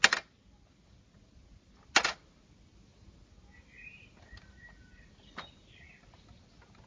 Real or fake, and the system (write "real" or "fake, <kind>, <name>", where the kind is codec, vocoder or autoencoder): real